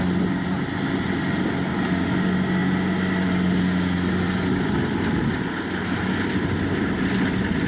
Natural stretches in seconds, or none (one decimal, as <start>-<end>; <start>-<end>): 0.0-7.7